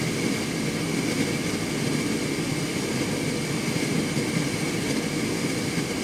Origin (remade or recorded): recorded